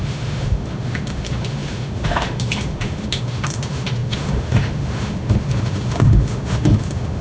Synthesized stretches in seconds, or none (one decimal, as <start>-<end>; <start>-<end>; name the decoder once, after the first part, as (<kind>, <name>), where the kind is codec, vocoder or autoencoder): 0.0-7.2 (autoencoder, DAC-VAE)